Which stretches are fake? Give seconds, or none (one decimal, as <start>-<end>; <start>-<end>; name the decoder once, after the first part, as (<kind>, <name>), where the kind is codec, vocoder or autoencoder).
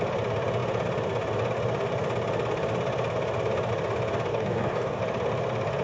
4.3-5.0 (codec, DAC)